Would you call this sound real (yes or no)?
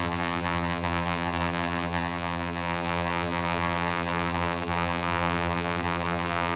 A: no